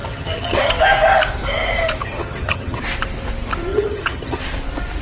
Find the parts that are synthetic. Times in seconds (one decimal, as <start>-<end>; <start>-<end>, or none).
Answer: 0.0-0.7; 2.0-2.8; 3.7-4.4